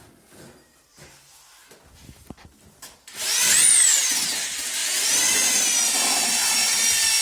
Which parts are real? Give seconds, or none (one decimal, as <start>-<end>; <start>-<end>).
0.0-7.2